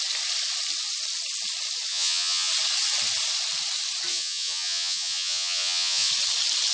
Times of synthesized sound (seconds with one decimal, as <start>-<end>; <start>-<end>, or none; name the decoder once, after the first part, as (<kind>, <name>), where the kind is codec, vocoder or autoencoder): 1.9-2.5 (vocoder, Vocos); 4.1-6.1

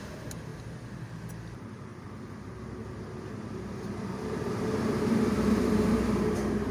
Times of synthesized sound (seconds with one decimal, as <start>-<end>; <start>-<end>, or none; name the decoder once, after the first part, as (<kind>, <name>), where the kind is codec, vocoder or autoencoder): 0.5-1.3 (vocoder, BigVGAN v2); 1.9-5.9

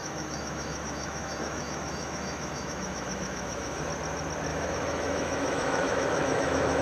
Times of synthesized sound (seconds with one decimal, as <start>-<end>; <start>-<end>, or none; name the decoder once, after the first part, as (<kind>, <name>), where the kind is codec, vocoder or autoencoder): 0.0-3.8 (autoencoder, DAC-VAE); 4.5-6.8

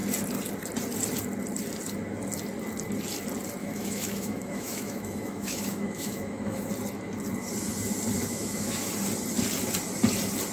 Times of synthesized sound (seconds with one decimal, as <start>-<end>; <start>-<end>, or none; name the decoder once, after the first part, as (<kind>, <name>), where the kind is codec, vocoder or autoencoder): 3.6-6.7 (autoencoder, DAC-VAE); 8.2-8.9

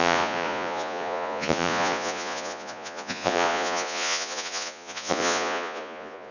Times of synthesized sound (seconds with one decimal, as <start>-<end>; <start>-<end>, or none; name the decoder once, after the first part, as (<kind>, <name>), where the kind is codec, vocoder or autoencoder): 0.0-6.3 (vocoder, Vocos)